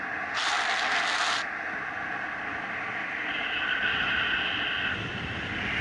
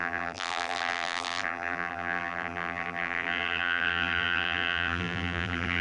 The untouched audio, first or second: first